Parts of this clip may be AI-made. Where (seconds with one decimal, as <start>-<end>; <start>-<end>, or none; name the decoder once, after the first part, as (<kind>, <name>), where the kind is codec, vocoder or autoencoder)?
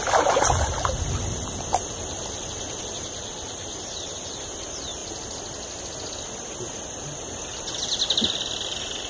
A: none